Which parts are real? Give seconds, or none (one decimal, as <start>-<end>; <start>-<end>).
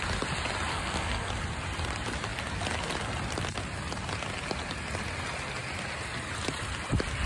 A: 0.0-0.7; 1.3-7.3